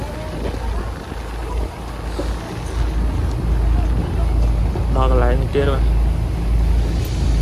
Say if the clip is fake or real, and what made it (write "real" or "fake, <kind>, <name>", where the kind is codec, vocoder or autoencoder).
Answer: real